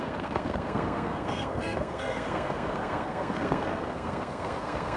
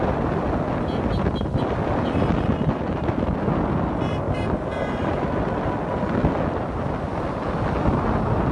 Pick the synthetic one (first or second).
first